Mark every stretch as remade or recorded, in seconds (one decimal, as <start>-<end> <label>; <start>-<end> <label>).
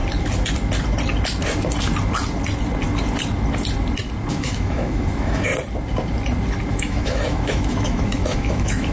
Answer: 0.0-4.3 recorded; 4.3-5.5 remade; 5.5-6.7 recorded; 6.7-8.9 remade